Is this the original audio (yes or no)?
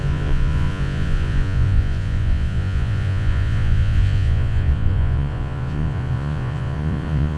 no